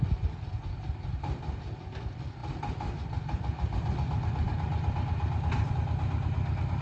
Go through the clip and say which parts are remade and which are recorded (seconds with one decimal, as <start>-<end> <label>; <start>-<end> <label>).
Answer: 0.0-6.8 recorded